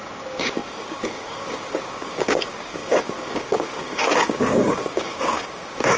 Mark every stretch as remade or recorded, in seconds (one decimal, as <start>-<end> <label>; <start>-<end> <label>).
0.0-6.0 remade